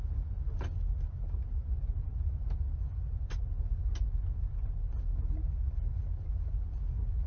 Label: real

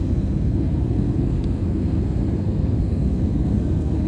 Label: fake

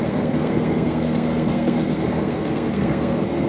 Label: fake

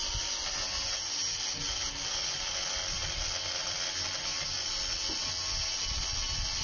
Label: real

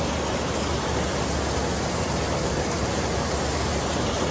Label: real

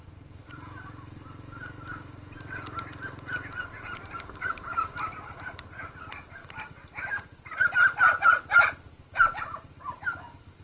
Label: real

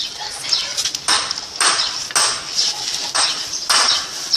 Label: real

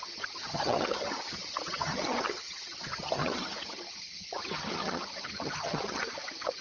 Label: fake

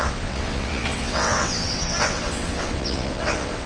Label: fake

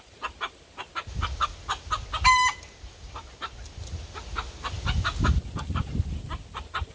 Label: real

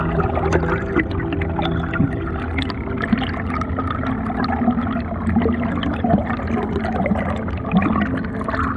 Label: real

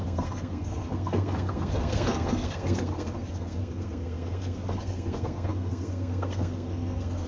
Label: fake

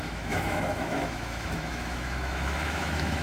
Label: fake